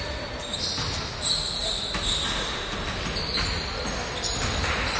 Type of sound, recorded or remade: recorded